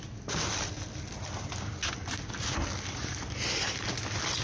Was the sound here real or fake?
real